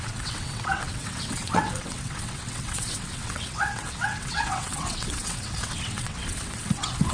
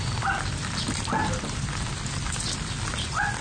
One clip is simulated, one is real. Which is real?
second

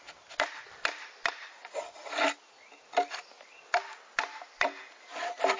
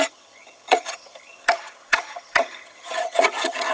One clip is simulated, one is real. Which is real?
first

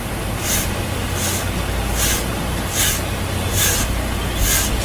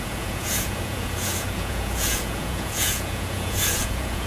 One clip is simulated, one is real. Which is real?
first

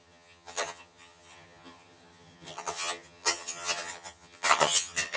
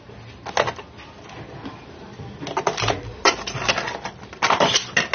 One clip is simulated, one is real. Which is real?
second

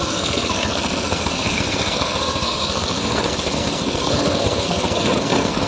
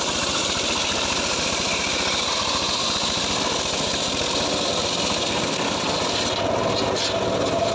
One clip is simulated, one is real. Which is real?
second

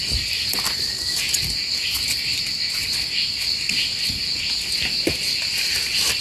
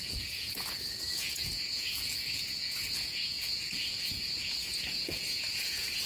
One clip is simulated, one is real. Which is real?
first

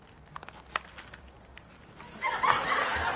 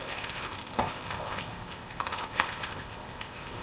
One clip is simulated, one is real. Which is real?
first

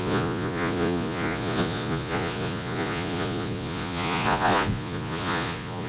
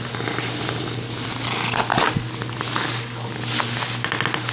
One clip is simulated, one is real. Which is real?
second